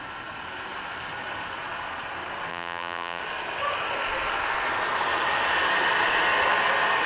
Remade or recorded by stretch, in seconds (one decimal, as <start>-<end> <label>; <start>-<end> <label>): 0.0-2.5 recorded; 2.5-3.2 remade; 3.2-7.1 recorded